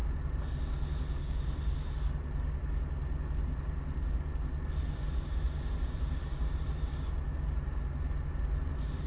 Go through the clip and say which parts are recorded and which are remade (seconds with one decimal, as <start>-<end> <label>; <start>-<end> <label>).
0.0-4.8 recorded; 4.8-7.3 remade; 7.3-8.7 recorded; 8.7-9.1 remade